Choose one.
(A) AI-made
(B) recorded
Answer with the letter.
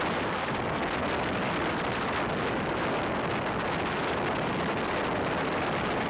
B